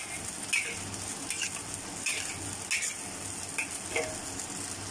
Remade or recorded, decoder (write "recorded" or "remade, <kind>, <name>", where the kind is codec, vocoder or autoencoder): recorded